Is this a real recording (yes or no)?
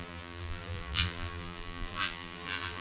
no